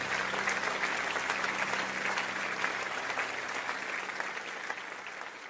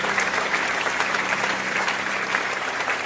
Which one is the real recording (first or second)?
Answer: first